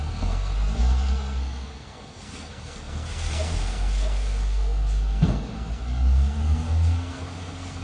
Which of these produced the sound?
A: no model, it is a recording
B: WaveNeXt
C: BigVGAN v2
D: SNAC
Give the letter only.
D